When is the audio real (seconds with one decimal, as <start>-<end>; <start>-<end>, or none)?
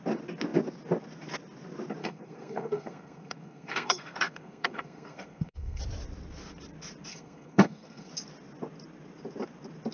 0.0-2.0; 5.8-7.1; 8.1-9.9